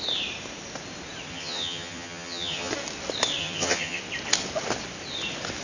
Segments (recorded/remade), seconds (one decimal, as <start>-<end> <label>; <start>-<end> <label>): 0.0-1.3 recorded; 1.3-2.7 remade; 2.7-3.4 recorded; 3.4-4.0 remade; 4.0-5.6 recorded